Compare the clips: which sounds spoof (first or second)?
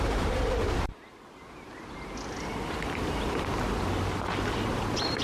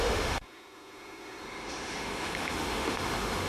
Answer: second